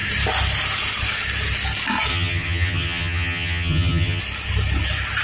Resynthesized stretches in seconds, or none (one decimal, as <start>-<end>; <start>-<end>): 2.1-4.2